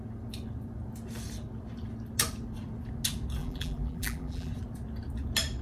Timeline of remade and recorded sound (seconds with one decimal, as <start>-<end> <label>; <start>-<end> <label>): 0.0-3.4 recorded; 3.4-4.5 remade; 4.5-5.6 recorded